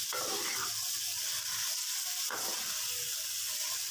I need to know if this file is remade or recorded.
recorded